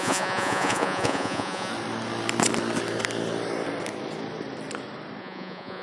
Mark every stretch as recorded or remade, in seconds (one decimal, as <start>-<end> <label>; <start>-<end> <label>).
0.0-1.7 remade; 1.7-5.2 recorded; 5.2-5.8 remade